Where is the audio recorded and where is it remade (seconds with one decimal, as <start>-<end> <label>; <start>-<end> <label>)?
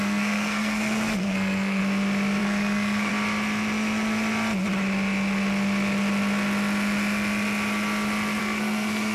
0.0-1.8 remade; 1.8-2.4 recorded; 2.4-3.1 remade; 3.1-8.4 recorded; 8.4-9.1 remade